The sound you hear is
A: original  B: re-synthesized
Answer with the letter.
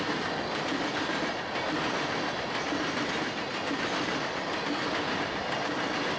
A